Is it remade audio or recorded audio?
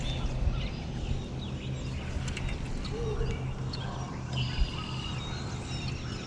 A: recorded